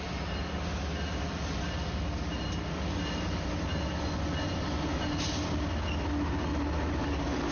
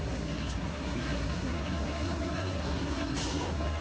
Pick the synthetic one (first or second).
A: second